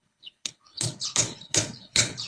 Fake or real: fake